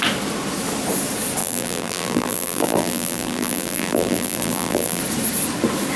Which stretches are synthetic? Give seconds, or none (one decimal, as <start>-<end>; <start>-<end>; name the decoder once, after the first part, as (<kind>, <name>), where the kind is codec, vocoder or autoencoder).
1.4-5.0 (vocoder, BigVGAN v2)